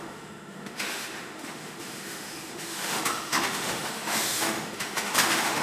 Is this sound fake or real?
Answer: fake